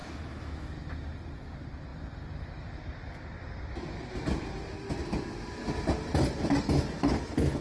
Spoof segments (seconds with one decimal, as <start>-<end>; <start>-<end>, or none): 0.0-0.7